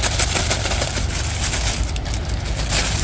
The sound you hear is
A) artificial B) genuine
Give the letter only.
B